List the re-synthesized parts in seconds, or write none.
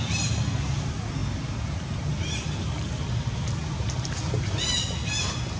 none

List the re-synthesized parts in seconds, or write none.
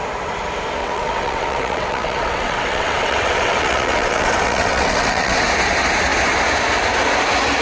0.8-5.4 (vocoder, WaveNeXt)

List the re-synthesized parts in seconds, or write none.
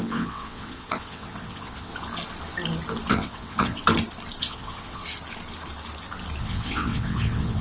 0.0-1.9 (vocoder, WaveNeXt); 3.1-3.8; 4.4-5.0; 6.4-7.6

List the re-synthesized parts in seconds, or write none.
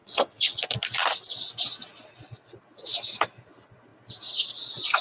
0.0-0.6 (vocoder, WaveNeXt)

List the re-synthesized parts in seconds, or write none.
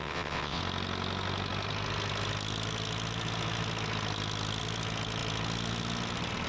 0.0-0.6 (vocoder, WaveNeXt)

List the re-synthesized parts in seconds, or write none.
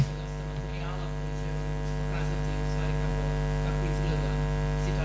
none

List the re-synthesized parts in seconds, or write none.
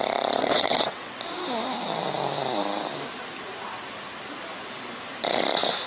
0.4-1.2 (vocoder, WaveNeXt)